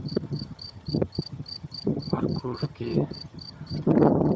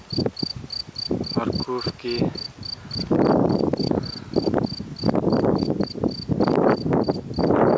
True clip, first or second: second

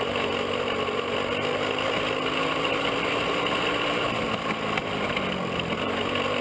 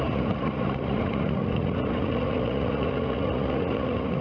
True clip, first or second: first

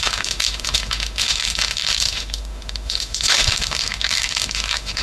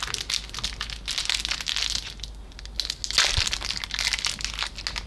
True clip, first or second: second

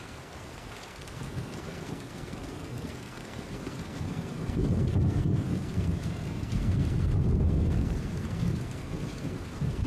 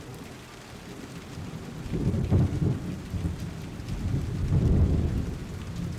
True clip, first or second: second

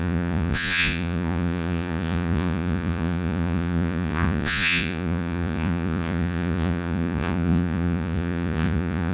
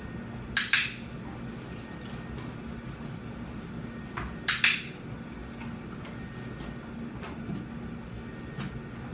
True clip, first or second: second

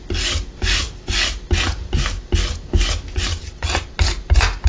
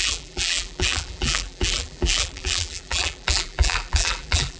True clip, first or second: first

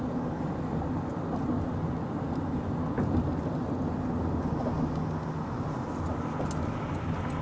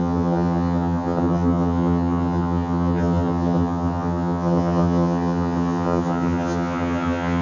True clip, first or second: first